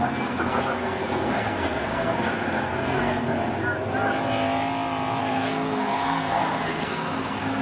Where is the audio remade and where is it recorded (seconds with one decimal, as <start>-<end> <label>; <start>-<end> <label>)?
0.0-3.4 remade; 3.4-5.2 recorded; 5.2-7.6 remade